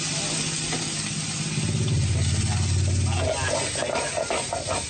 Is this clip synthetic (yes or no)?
no